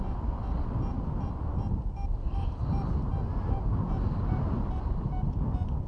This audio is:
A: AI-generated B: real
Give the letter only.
B